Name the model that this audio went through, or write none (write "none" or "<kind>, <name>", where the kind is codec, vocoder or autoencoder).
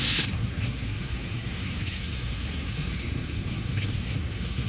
codec, SNAC